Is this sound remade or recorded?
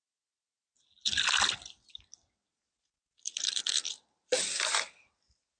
recorded